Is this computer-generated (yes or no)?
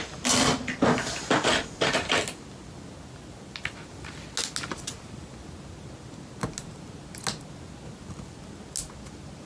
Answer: no